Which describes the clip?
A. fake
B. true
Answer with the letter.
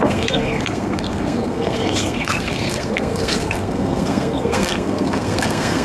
A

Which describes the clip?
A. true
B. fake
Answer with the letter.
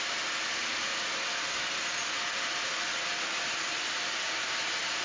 A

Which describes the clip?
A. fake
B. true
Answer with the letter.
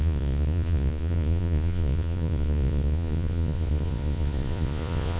A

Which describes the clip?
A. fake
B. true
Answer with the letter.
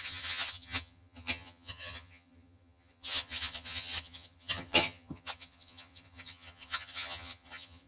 A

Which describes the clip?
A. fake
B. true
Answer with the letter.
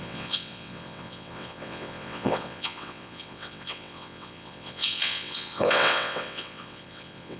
A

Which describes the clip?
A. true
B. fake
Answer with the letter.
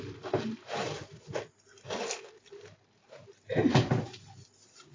A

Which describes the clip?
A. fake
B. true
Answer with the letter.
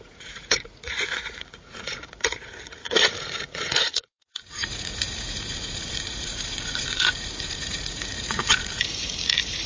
A